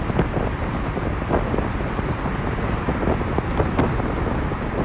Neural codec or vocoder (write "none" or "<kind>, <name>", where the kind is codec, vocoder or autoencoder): none